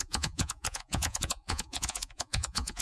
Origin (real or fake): fake